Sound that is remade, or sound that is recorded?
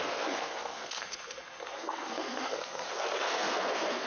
remade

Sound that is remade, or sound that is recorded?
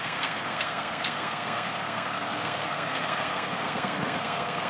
remade